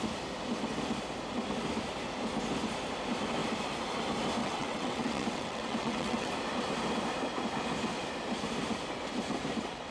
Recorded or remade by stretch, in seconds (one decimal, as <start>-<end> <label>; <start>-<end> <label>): 0.0-4.4 recorded; 4.4-6.3 remade; 6.3-9.9 recorded